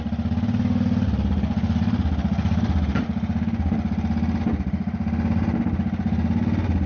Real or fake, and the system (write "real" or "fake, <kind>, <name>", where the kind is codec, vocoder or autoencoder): real